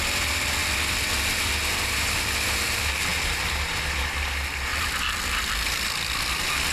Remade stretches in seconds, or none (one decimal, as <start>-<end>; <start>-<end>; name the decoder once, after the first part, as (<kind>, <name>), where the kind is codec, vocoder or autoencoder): 3.1-3.8 (vocoder, BigVGAN v2); 4.7-6.7